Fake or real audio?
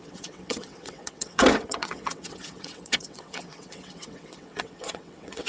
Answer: fake